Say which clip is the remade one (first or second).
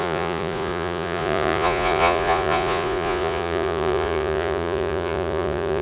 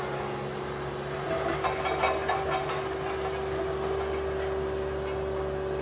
first